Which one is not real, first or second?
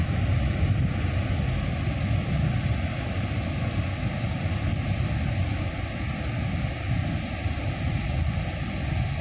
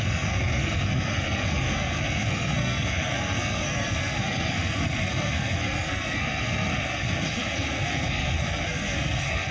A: second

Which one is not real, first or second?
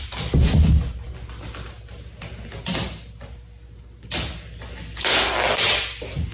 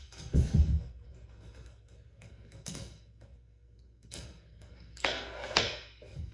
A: second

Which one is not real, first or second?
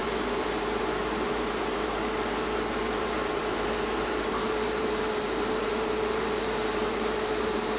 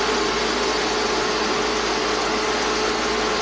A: first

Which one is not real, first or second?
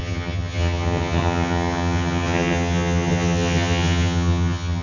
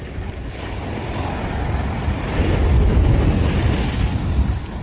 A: first